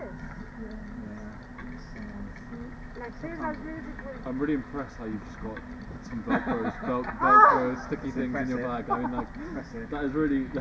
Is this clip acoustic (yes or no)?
yes